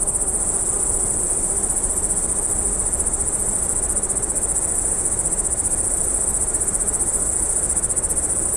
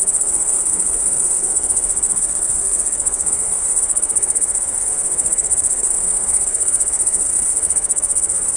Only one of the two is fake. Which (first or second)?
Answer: second